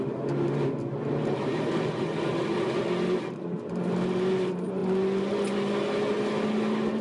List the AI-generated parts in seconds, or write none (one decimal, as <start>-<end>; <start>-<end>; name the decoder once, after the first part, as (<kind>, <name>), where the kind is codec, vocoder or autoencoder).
none